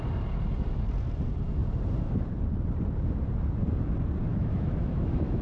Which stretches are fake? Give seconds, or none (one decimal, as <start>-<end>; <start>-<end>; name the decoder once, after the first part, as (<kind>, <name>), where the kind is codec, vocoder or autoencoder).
4.3-5.4 (autoencoder, DAC-VAE)